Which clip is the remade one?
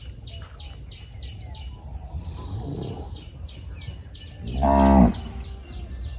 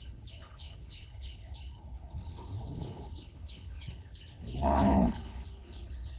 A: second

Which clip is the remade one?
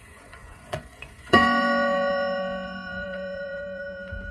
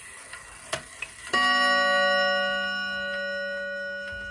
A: first